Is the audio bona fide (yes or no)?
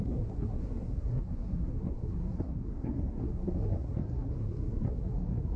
no